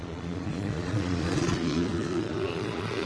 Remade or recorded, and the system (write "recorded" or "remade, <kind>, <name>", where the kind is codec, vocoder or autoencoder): remade, vocoder, Vocos